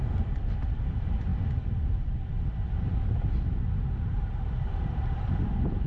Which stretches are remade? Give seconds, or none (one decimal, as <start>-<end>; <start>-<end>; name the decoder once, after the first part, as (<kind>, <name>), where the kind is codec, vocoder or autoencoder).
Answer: none